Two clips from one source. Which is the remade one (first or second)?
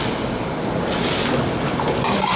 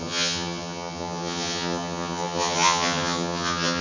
second